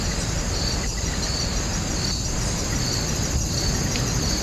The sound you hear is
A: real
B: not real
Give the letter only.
B